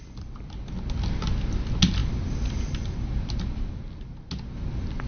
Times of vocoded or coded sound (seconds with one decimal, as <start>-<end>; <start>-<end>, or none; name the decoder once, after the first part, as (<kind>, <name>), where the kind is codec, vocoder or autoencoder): none